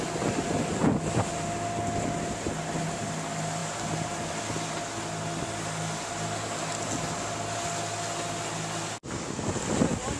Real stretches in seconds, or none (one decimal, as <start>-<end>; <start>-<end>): 0.0-10.2